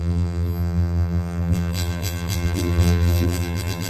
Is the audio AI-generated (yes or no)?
yes